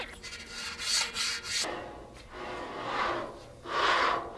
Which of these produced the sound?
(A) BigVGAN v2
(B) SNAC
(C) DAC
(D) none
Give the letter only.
D